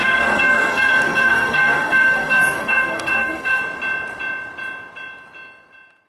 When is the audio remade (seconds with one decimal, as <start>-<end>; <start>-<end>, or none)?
0.0-3.6